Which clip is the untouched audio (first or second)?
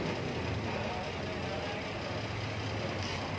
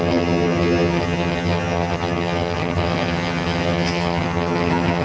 first